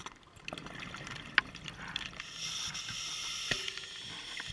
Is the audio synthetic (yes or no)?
no